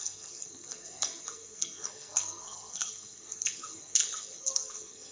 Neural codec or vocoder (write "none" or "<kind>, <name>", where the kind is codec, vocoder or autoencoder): codec, SNAC